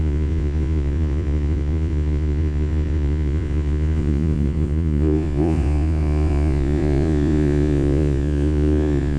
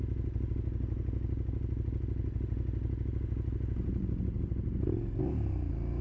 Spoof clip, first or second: first